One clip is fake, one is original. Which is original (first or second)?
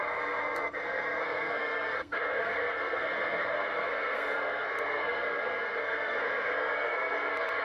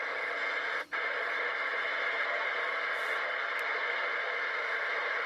second